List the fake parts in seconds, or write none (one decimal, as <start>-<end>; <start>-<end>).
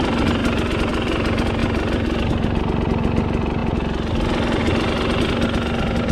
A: none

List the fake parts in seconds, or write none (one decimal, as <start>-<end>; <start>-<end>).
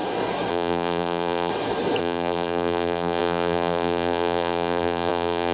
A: 0.5-1.5; 2.0-5.5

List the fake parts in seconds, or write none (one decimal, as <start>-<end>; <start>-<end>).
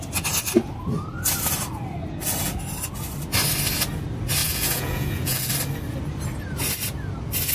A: 4.4-5.5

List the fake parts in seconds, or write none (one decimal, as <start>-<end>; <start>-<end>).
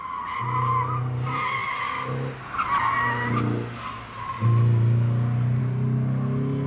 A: none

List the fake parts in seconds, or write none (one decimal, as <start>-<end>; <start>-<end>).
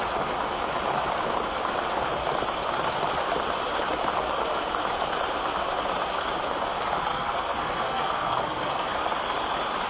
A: 7.1-8.9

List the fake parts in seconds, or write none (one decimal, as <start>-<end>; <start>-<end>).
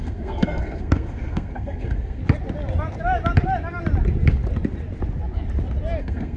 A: 0.0-2.2; 6.0-6.4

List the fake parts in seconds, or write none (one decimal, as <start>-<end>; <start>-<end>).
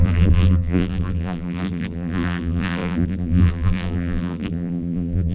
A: 0.0-5.3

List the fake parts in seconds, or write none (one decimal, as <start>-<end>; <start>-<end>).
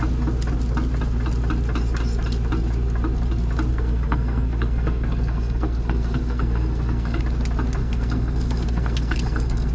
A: 3.7-7.2; 7.8-9.7